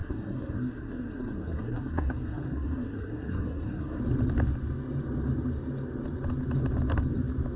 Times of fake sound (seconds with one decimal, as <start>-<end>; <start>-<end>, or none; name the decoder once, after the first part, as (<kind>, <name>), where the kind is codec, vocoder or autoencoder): 0.0-4.0 (codec, SNAC)